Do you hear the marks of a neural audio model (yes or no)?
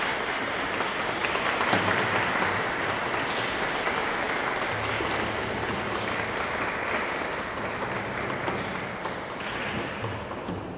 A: no